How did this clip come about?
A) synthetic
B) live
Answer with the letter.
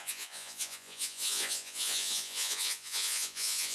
A